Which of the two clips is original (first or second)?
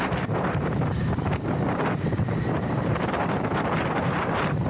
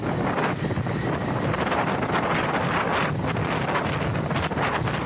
second